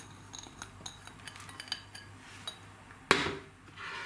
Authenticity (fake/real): real